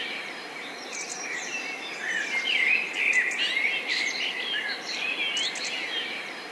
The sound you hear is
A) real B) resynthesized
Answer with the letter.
A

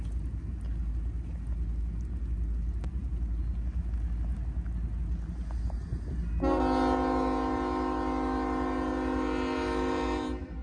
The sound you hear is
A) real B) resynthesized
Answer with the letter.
A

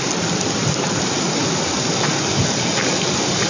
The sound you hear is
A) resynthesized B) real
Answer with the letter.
B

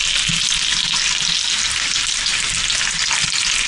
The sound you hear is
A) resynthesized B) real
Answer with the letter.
B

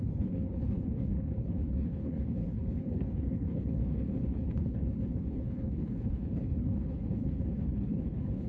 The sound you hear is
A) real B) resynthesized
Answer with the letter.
B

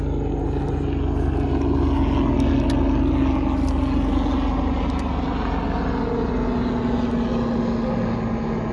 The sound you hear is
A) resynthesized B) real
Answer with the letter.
B